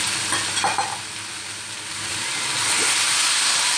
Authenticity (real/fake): real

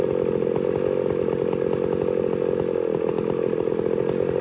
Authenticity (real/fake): real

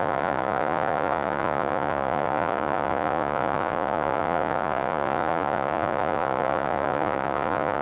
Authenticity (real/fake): fake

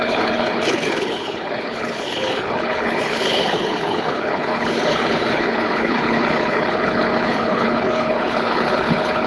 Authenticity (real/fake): fake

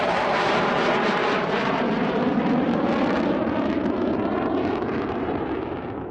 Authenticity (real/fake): fake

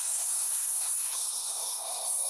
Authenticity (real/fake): fake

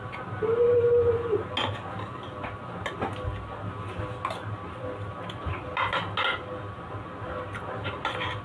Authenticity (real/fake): real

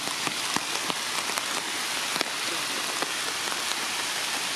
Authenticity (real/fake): real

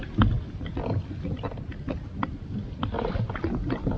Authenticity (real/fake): real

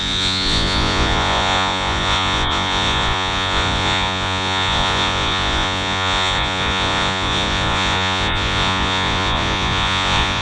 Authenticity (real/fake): fake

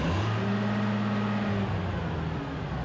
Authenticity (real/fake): real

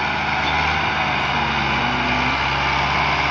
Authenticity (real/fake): real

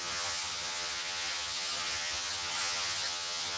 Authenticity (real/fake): fake